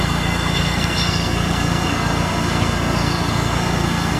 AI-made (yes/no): yes